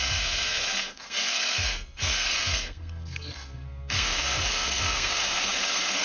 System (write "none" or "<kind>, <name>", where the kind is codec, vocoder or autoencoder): codec, SNAC